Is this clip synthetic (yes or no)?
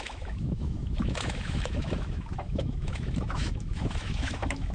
yes